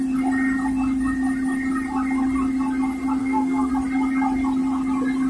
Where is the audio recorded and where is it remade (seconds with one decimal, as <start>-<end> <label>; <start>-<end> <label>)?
0.0-3.2 recorded; 3.2-3.7 remade; 3.7-5.3 recorded